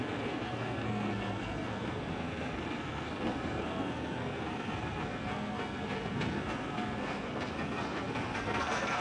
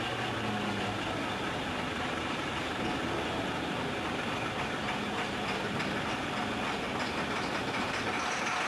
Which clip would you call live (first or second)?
second